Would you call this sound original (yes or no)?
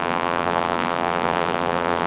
no